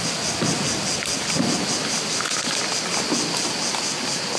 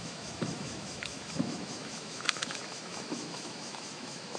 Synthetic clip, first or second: second